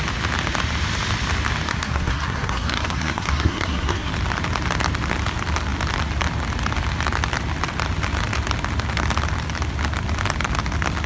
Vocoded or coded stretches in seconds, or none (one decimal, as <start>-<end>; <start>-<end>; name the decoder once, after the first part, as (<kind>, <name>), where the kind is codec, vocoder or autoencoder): 1.7-4.1 (codec, SNAC)